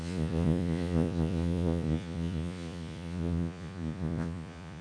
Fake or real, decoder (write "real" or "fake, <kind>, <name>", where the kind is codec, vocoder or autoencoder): fake, vocoder, Vocos